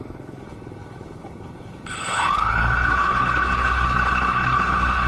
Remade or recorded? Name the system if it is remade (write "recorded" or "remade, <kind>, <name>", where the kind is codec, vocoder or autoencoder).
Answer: remade, codec, HILCodec